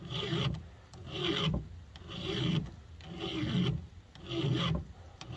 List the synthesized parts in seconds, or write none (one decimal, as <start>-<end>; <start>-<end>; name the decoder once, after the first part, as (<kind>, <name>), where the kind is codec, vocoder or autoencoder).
none